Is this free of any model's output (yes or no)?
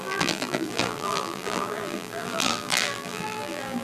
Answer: no